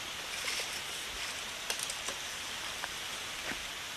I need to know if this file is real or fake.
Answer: real